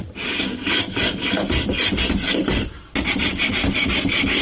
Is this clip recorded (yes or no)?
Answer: yes